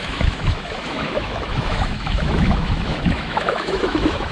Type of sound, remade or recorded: remade